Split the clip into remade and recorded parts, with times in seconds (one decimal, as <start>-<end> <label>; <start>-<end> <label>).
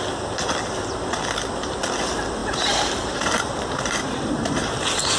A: 0.0-2.4 recorded; 2.4-4.7 remade; 4.7-5.2 recorded